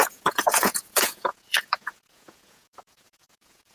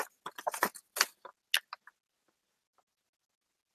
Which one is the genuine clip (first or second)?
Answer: second